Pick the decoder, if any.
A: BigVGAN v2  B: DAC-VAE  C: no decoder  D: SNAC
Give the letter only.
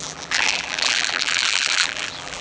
A